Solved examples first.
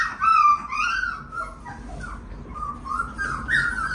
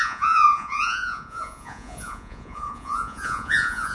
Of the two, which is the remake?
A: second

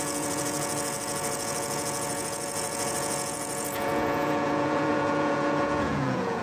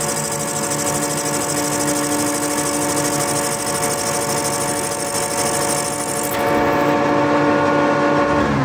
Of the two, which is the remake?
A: first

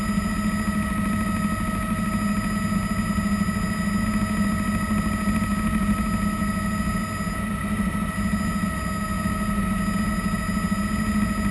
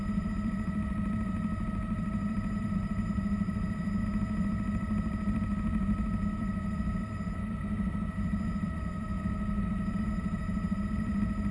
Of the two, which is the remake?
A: second